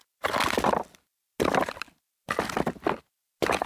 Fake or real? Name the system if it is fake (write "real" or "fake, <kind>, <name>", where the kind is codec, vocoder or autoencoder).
real